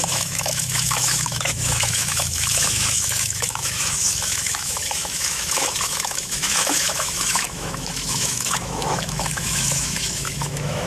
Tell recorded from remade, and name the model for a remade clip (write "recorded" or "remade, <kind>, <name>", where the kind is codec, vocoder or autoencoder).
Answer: remade, autoencoder, DAC-VAE